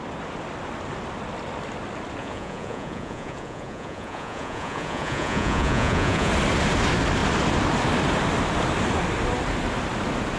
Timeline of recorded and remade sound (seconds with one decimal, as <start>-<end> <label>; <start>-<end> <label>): 0.0-2.2 recorded; 2.2-6.3 remade; 6.3-10.4 recorded